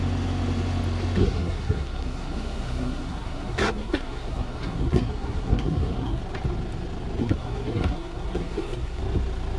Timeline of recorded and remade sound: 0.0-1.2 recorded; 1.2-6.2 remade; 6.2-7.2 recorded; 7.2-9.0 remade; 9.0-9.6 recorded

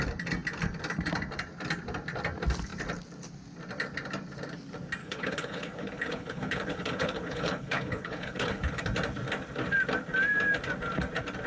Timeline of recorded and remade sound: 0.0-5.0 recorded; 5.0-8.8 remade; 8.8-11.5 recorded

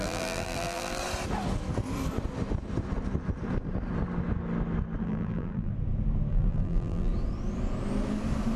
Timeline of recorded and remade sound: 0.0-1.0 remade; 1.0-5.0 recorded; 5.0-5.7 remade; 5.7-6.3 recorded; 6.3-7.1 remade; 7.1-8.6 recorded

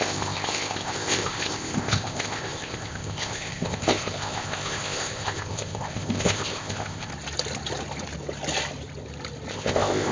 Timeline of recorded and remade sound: 0.0-7.1 remade; 7.1-9.5 recorded; 9.5-10.1 remade

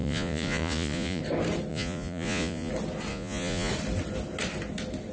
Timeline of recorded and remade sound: 0.0-1.2 remade; 1.2-1.7 recorded; 1.7-2.7 remade; 2.7-3.1 recorded; 3.1-3.7 remade; 3.7-5.1 recorded

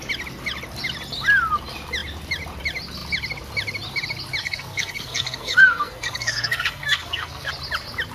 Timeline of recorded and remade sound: 0.0-4.4 recorded; 4.4-7.5 remade; 7.5-8.1 recorded